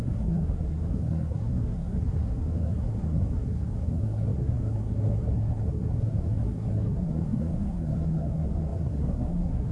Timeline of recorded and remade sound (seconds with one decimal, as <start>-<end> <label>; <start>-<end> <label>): 0.0-9.7 remade